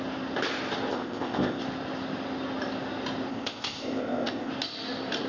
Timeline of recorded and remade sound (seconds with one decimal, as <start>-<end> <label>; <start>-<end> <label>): 0.0-0.9 recorded; 0.9-1.6 remade; 1.6-3.3 recorded; 3.3-4.5 remade; 4.5-5.3 recorded